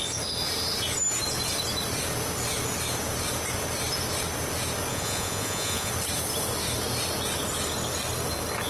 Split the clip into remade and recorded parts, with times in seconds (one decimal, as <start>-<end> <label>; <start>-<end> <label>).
0.0-4.9 recorded; 4.9-5.9 remade; 5.9-8.7 recorded